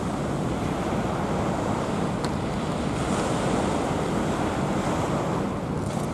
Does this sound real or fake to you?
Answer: real